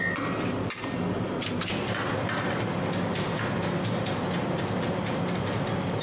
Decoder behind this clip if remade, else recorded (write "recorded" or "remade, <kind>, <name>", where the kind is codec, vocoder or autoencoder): recorded